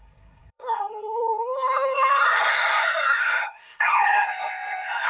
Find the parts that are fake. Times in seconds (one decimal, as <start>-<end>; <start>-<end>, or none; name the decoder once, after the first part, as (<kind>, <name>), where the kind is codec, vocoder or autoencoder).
0.0-5.1 (codec, SNAC)